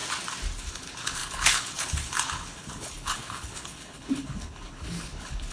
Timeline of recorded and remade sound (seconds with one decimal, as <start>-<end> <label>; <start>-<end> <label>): 0.0-0.6 recorded; 0.6-5.5 remade